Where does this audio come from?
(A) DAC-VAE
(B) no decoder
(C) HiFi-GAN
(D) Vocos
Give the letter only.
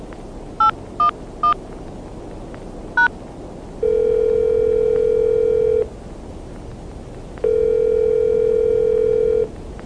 B